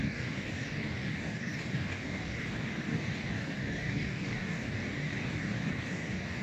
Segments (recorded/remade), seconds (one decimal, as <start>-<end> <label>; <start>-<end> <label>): 0.0-6.4 remade